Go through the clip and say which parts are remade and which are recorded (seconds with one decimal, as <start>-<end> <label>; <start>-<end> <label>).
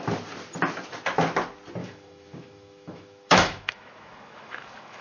0.0-1.8 recorded; 1.8-5.0 remade